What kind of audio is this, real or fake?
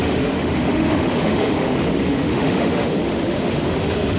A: fake